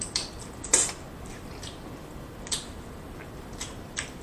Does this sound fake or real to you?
real